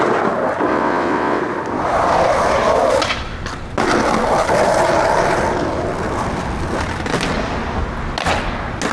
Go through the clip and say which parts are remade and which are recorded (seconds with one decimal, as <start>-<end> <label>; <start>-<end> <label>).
0.0-0.7 recorded; 0.7-1.4 remade; 1.4-8.9 recorded